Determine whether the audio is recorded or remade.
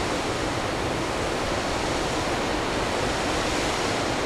recorded